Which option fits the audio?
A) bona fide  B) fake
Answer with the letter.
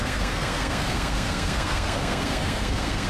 B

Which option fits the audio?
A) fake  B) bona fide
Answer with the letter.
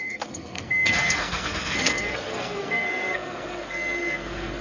A